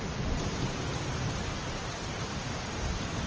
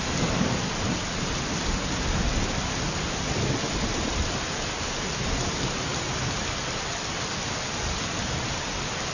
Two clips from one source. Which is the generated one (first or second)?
first